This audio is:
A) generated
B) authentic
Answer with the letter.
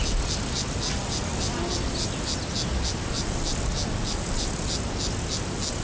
B